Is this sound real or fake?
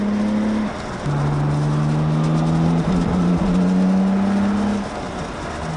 real